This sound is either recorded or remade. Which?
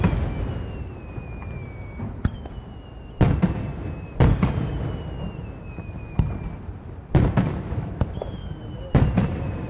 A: recorded